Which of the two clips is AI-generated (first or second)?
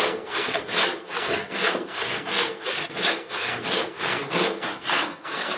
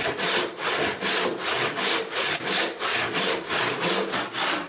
first